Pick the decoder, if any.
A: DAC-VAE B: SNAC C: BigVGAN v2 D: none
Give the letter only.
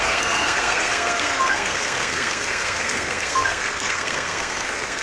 B